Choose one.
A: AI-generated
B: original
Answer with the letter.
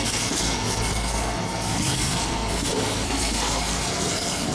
A